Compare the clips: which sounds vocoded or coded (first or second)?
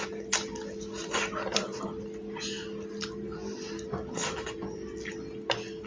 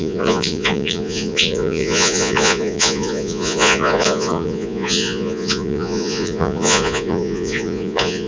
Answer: second